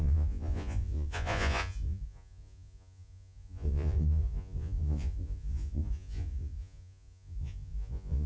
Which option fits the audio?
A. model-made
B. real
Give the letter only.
A